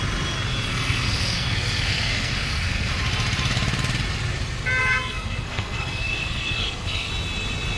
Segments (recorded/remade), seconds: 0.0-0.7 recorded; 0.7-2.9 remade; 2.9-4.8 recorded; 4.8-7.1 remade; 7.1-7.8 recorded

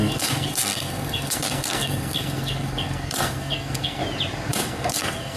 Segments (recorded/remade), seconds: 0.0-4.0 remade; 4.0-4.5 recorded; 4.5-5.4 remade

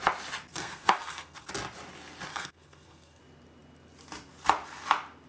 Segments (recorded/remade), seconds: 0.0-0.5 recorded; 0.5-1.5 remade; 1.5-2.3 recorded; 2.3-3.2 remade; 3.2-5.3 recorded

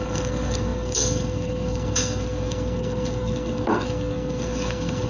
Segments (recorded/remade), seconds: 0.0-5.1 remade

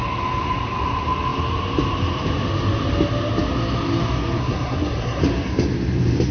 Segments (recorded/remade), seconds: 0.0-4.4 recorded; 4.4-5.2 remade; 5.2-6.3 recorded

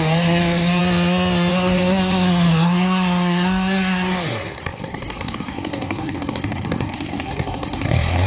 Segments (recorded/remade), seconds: 0.0-0.8 remade; 0.8-1.5 recorded; 1.5-8.3 remade

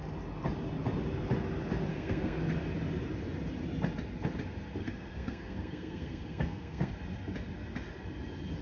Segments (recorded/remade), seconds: 0.0-1.9 recorded; 1.9-2.4 remade; 2.4-4.8 recorded; 4.8-6.9 remade; 6.9-8.6 recorded

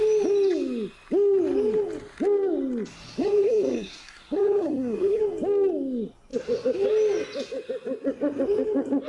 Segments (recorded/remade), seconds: 0.0-3.2 recorded; 3.2-5.2 remade; 5.2-9.1 recorded